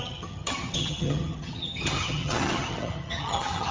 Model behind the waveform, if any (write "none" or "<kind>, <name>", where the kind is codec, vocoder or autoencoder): vocoder, HiFi-GAN